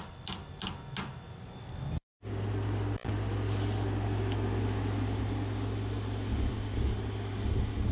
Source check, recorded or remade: recorded